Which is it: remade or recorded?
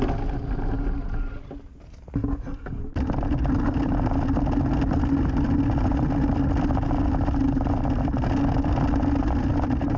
recorded